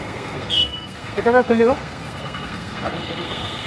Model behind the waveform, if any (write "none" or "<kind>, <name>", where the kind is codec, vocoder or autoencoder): codec, SNAC